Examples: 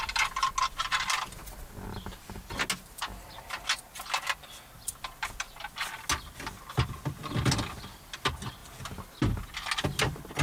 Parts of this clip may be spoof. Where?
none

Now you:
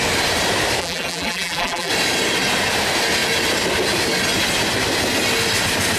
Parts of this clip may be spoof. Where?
0.8-1.9 (vocoder, BigVGAN v2)

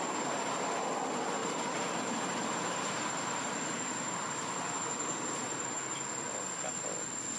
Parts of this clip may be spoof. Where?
1.4-5.8 (vocoder, BigVGAN v2)

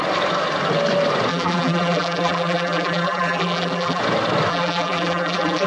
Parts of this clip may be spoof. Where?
1.3-4.0 (vocoder, BigVGAN v2); 4.5-5.7

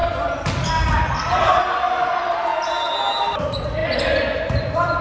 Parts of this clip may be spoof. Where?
0.7-2.5 (vocoder, BigVGAN v2); 3.2-5.0

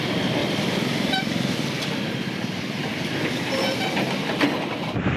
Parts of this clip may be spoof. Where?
0.4-3.5 (vocoder, BigVGAN v2)